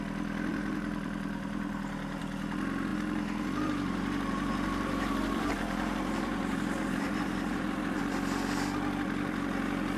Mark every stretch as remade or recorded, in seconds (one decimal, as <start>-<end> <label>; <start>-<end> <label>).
0.0-0.5 recorded; 0.5-2.2 remade; 2.2-2.9 recorded; 2.9-8.0 remade; 8.0-10.0 recorded